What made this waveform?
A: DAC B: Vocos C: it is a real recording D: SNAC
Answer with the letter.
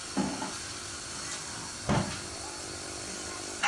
C